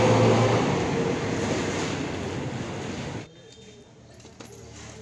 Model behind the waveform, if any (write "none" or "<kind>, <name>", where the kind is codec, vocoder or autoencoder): none